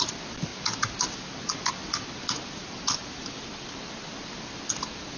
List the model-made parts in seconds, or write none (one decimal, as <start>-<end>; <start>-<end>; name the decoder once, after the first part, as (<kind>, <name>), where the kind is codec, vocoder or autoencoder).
0.5-1.7 (vocoder, BigVGAN v2); 2.6-3.5